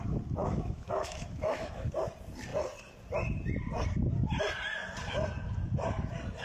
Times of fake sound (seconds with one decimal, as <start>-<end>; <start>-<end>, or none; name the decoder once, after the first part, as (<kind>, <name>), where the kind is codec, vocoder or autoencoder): 0.4-1.9 (autoencoder, DAC-VAE)

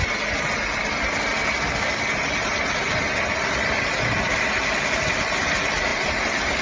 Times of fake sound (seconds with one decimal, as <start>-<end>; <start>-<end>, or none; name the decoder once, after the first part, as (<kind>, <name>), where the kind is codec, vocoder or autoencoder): 5.9-6.6 (vocoder, BigVGAN v2)

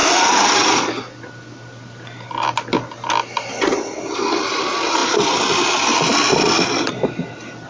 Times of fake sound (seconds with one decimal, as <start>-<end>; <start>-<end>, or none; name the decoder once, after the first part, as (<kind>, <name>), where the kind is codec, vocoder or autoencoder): none

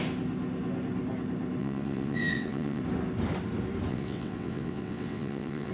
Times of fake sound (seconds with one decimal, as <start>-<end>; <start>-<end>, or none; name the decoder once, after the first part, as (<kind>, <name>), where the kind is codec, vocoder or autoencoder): 1.6-2.8 (vocoder, WaveNeXt); 3.9-5.7

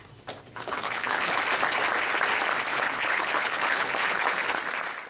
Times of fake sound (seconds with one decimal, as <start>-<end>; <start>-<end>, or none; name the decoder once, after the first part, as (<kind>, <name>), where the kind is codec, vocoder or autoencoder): 0.5-1.4 (codec, HILCodec); 2.7-4.6

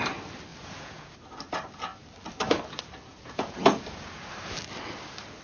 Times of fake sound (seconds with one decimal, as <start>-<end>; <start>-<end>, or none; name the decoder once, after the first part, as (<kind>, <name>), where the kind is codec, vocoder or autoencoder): 0.5-1.1 (vocoder, Vocos); 3.1-4.2

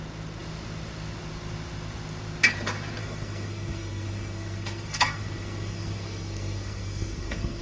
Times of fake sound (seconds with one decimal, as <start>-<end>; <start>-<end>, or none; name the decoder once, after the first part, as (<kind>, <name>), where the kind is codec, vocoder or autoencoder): 3.0-7.6 (codec, SNAC)